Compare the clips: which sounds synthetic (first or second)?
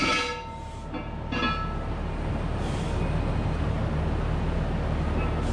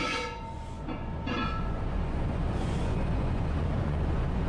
second